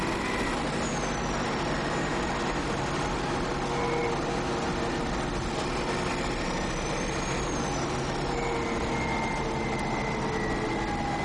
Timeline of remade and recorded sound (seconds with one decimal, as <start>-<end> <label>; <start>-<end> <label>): 0.0-11.2 recorded